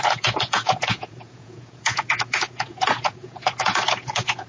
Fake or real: fake